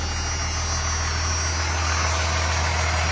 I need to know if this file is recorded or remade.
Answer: recorded